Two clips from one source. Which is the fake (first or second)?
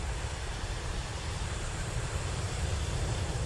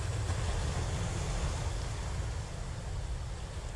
first